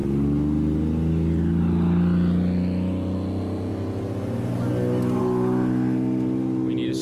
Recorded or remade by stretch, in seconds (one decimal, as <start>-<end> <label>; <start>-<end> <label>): 0.0-7.0 recorded